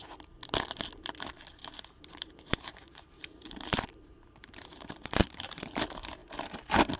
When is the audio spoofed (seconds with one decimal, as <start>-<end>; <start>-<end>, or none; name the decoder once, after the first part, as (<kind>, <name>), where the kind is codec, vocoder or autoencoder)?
1.6-5.8 (vocoder, BigVGAN v2); 6.2-7.0